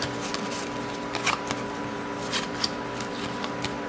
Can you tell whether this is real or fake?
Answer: real